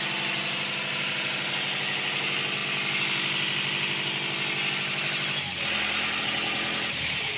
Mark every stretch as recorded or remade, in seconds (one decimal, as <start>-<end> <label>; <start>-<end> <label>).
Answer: 0.0-7.4 recorded